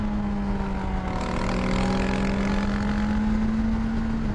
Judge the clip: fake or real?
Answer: real